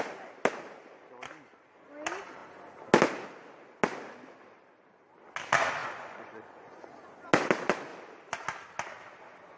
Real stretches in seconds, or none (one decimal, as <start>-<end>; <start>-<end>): 0.0-5.8; 6.9-9.6